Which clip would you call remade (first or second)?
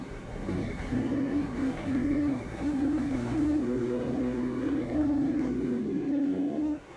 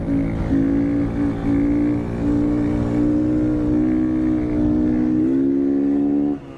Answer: first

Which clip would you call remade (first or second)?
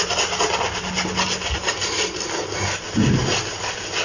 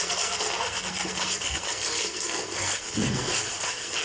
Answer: second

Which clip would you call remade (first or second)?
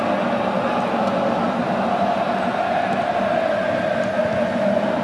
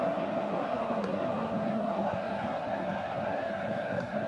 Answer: second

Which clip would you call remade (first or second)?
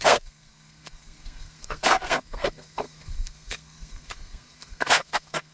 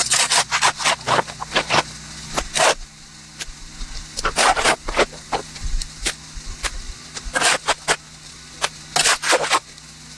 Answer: first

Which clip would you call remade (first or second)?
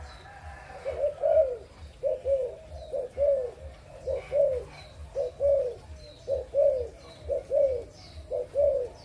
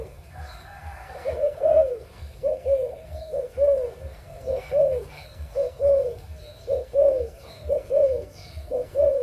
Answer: second